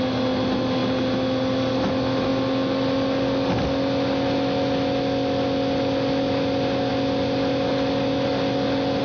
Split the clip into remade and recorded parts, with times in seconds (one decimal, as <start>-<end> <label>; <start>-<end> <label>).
0.0-9.0 recorded

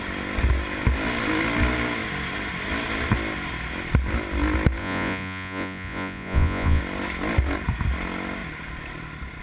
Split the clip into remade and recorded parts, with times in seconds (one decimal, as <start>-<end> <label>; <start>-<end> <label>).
0.0-4.8 recorded; 4.8-6.8 remade; 6.8-9.4 recorded

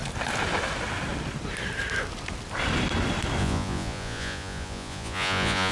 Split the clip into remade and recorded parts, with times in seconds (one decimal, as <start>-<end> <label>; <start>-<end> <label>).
0.0-3.4 recorded; 3.4-5.7 remade